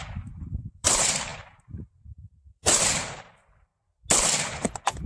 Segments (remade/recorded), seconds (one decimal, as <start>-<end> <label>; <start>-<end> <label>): 0.0-3.7 remade; 3.7-5.1 recorded